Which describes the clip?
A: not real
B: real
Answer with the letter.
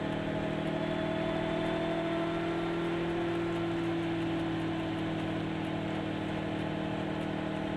B